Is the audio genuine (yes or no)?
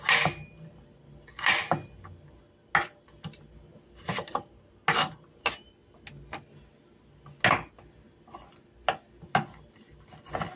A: yes